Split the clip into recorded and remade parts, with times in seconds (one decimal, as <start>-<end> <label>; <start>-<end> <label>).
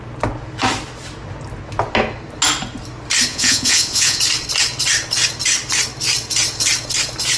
0.0-3.3 recorded; 3.3-4.2 remade; 4.2-7.4 recorded